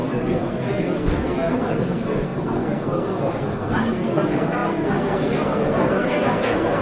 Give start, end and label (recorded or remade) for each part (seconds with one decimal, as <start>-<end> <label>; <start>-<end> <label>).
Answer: 0.0-6.8 remade